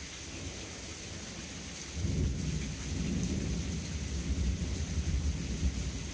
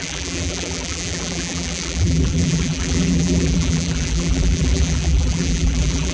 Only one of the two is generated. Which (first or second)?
second